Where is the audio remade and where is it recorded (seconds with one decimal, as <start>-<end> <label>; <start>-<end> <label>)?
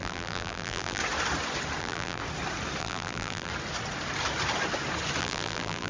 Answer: 0.0-1.0 remade; 1.0-1.8 recorded; 1.8-2.2 remade; 2.2-2.8 recorded; 2.8-3.5 remade; 3.5-5.2 recorded; 5.2-5.9 remade